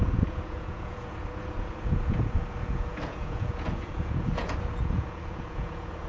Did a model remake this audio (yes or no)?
yes